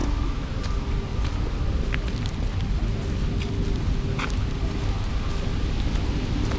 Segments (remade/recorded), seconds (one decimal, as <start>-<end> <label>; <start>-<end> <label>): 0.0-0.5 remade; 0.5-6.6 recorded